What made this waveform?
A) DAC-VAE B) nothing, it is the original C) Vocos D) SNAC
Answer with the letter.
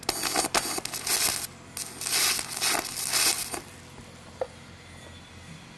B